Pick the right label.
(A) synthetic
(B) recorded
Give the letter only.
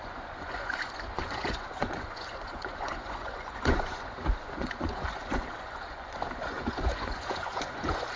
A